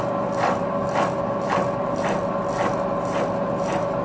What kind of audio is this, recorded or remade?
recorded